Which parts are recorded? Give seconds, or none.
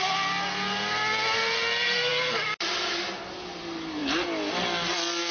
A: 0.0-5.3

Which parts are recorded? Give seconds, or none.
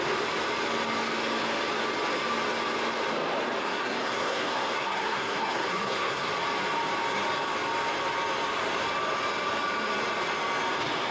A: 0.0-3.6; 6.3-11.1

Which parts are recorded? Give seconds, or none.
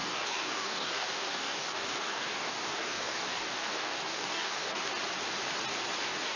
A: 4.8-6.0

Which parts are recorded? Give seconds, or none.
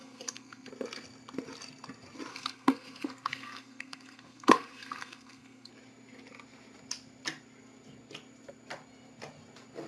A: 0.7-2.3; 5.7-9.9